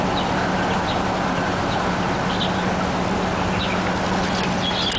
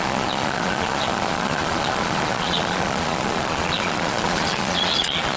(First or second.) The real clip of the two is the first